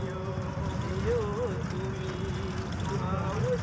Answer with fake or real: real